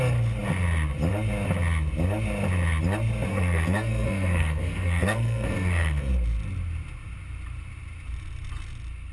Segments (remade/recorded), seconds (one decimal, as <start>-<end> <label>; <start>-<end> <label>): 0.0-3.3 recorded; 3.3-6.1 remade; 6.1-9.1 recorded